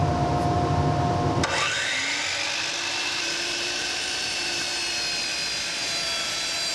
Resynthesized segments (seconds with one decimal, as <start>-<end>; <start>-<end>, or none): 2.9-4.7; 5.8-6.7